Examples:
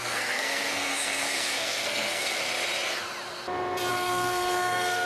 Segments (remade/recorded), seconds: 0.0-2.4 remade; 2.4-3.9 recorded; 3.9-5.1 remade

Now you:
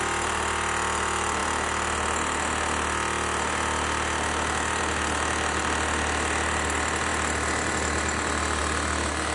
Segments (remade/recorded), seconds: 0.0-9.3 recorded

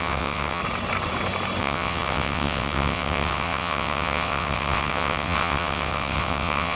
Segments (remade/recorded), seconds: 0.0-0.6 remade; 0.6-1.6 recorded; 1.6-6.7 remade